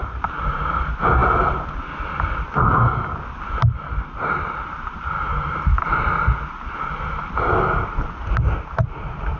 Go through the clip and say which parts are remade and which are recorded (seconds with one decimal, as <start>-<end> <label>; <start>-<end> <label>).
0.0-9.4 recorded